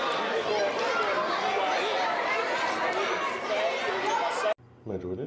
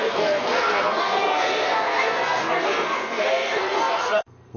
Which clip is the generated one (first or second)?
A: second